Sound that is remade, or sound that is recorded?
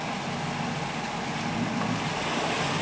recorded